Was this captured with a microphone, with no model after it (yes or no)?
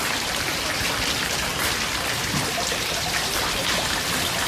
no